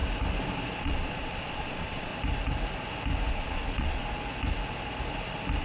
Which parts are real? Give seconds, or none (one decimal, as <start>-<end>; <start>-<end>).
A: 0.0-0.8; 2.1-3.3; 4.0-5.6